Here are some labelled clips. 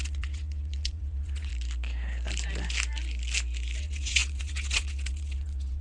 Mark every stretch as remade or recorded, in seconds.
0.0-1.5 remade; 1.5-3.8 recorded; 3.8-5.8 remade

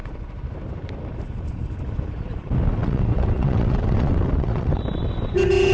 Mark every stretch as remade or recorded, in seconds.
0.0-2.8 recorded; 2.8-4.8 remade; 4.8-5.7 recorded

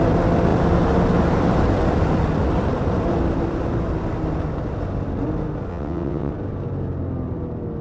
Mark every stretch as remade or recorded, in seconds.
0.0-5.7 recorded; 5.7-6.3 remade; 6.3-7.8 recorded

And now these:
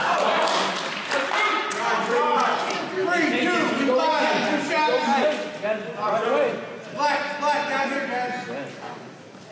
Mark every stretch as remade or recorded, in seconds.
0.0-9.5 recorded

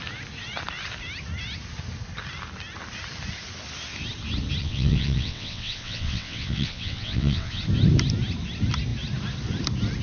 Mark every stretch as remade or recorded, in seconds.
0.0-4.6 recorded; 4.6-7.6 remade; 7.6-10.0 recorded

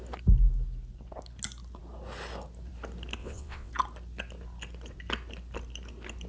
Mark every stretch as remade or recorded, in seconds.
0.0-3.2 recorded; 3.2-3.7 remade; 3.7-6.3 recorded

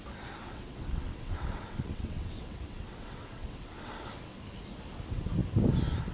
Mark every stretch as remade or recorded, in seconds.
0.0-0.4 recorded; 0.4-4.1 remade; 4.1-6.1 recorded